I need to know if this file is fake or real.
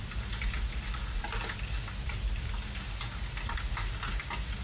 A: real